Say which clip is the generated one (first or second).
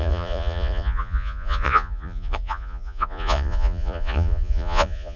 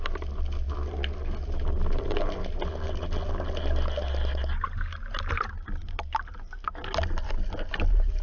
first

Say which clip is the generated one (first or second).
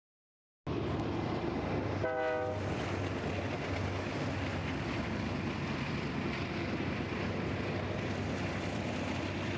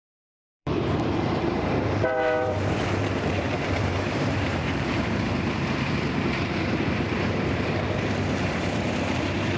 second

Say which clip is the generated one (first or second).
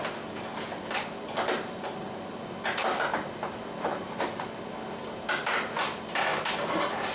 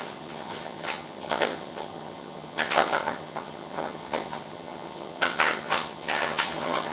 second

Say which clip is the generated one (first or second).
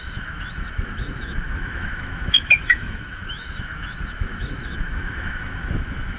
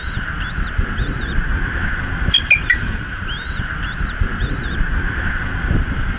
first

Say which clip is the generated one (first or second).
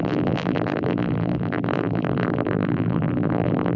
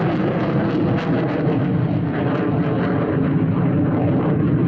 first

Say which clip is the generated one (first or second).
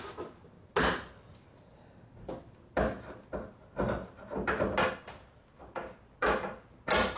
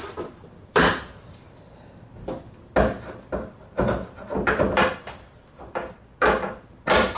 second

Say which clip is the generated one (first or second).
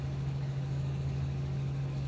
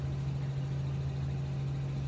first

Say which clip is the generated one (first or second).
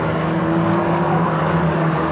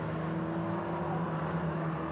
first